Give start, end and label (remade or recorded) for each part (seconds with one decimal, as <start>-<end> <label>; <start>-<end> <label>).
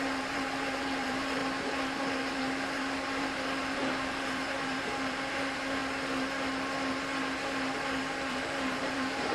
0.0-1.4 remade; 1.4-2.4 recorded; 2.4-5.8 remade; 5.8-8.3 recorded; 8.3-9.3 remade